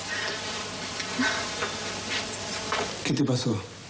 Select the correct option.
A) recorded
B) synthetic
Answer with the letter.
A